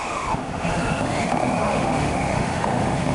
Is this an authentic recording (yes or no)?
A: no